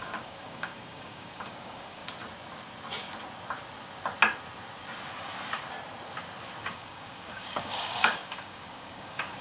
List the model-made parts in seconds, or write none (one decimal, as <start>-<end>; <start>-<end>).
0.0-2.0; 6.6-9.4